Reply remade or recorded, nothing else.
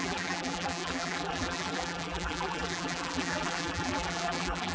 remade